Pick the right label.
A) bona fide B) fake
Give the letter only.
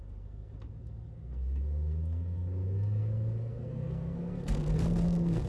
B